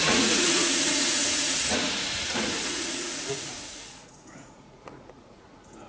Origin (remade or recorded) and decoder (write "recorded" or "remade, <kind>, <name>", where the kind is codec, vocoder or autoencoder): remade, vocoder, Vocos